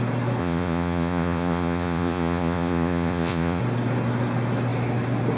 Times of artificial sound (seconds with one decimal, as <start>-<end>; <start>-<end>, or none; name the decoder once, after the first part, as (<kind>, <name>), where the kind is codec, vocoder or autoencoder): 0.4-3.6 (vocoder, Vocos)

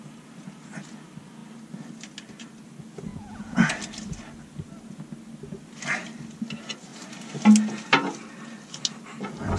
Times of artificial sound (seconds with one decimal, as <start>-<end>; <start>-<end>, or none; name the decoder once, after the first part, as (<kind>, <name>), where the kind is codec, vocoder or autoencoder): 3.1-3.7 (vocoder, Vocos)

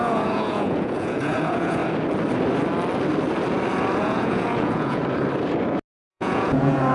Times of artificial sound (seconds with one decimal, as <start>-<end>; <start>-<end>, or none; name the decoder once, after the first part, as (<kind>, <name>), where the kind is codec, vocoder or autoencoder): 0.0-1.8 (vocoder, Vocos); 4.0-5.0; 6.1-6.9